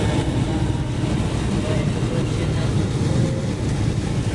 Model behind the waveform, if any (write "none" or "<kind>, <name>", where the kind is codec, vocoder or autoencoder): none